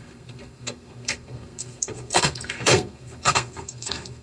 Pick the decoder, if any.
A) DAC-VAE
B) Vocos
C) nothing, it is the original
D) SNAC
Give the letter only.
D